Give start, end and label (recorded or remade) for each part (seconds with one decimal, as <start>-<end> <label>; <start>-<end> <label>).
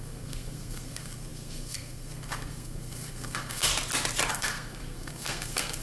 0.0-3.7 remade; 3.7-4.3 recorded; 4.3-5.8 remade